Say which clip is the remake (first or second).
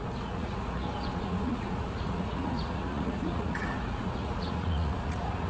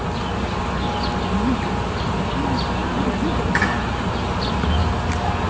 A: first